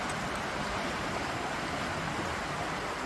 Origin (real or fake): real